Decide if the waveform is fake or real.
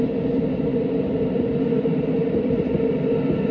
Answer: real